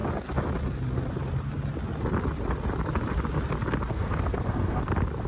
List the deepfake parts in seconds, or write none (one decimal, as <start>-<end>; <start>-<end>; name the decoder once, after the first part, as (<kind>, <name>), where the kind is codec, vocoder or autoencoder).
3.9-4.8 (codec, SNAC)